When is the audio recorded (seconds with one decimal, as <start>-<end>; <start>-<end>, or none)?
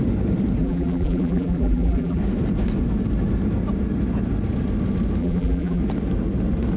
0.0-0.6; 2.2-5.2; 5.8-6.8